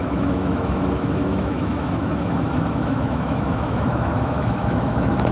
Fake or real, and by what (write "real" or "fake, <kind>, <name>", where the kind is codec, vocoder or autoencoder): fake, autoencoder, DAC-VAE